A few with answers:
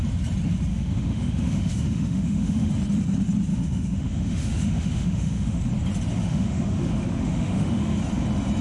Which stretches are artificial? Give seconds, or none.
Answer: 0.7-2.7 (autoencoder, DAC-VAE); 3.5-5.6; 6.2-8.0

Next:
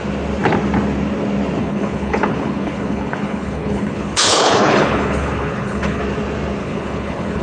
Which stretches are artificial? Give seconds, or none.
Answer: 1.6-6.0 (codec, HILCodec); 6.6-7.4

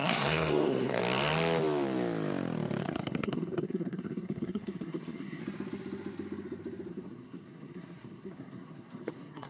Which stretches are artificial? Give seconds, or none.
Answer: 0.0-1.0 (codec, SNAC); 2.8-5.4; 6.9-9.5

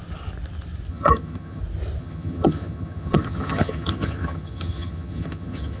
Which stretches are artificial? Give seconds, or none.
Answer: 0.9-1.6 (vocoder, HiFi-GAN); 2.0-5.8

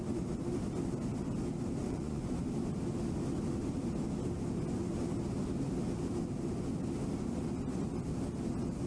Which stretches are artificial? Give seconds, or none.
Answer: 1.8-2.4 (vocoder, Vocos)

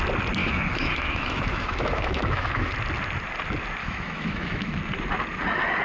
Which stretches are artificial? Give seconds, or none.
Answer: 0.4-2.7 (autoencoder, DAC-VAE); 3.8-4.8

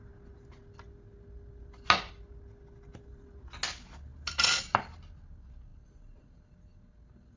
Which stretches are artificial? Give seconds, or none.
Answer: none